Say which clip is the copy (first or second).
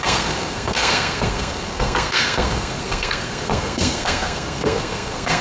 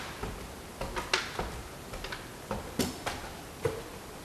first